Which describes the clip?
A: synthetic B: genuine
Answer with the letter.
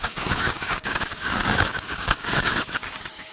A